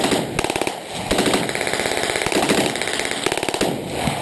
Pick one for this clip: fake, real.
real